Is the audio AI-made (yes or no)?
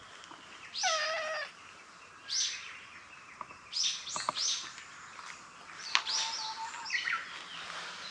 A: no